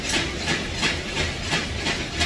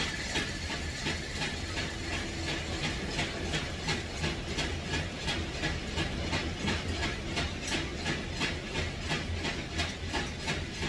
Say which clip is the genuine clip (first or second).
second